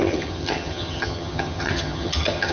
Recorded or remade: remade